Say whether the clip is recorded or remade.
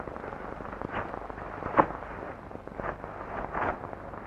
recorded